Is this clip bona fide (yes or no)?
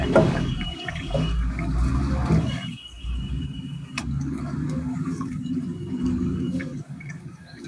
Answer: no